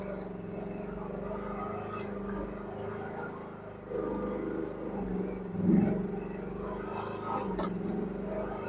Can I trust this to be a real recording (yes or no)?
yes